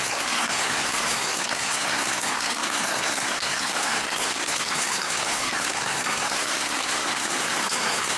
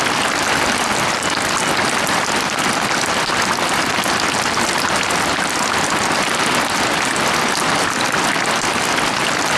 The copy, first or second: first